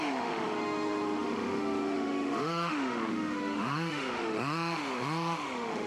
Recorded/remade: remade